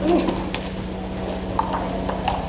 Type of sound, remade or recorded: recorded